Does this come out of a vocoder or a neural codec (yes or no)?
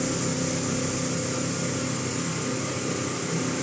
no